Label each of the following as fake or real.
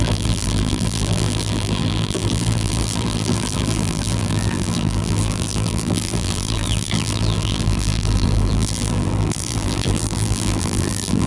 fake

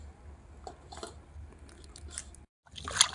real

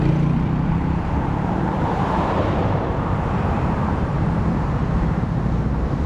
fake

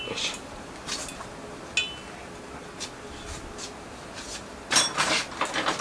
real